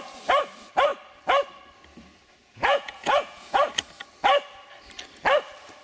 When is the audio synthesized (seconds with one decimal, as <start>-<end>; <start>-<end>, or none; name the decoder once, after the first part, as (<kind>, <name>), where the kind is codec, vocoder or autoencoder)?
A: 2.4-3.7 (vocoder, Vocos)